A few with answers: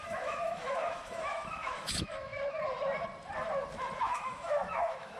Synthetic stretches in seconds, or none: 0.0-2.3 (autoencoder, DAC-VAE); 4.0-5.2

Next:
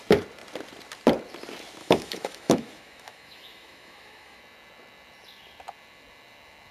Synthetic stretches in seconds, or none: 1.8-4.4 (autoencoder, DAC-VAE)

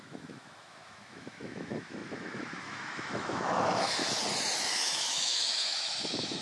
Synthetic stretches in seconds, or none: 0.0-4.0 (autoencoder, DAC-VAE); 4.7-6.4

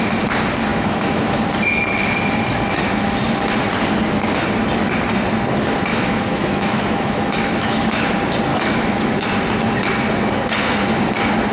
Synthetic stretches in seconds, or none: 0.7-1.4 (autoencoder, DAC-VAE); 5.9-8.1; 8.5-9.3

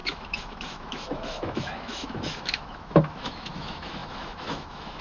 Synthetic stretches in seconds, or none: 0.0-5.0 (autoencoder, DAC-VAE)